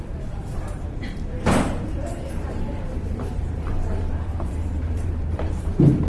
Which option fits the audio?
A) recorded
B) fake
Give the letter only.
B